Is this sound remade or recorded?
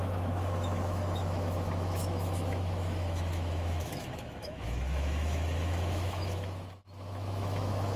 remade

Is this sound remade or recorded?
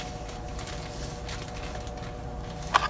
recorded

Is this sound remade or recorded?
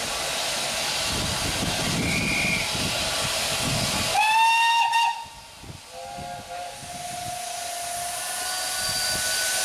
recorded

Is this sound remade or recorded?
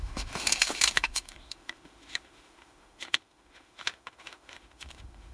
remade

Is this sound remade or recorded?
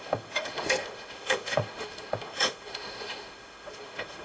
remade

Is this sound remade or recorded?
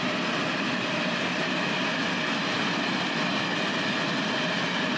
recorded